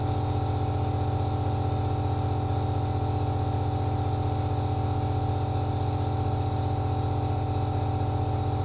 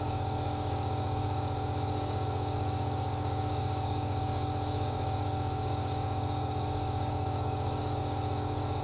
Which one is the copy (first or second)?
second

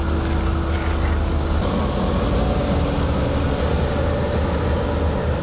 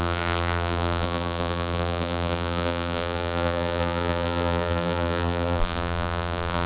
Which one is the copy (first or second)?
second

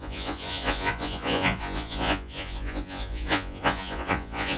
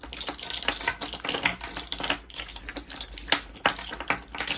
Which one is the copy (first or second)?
first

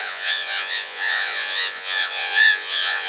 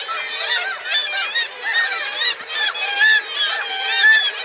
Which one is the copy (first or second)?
first